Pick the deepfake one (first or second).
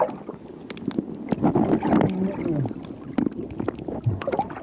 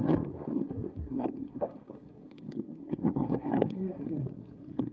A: second